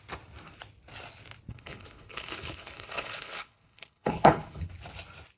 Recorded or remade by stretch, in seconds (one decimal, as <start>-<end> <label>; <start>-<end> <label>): 0.0-1.5 recorded; 1.5-4.7 remade; 4.7-5.4 recorded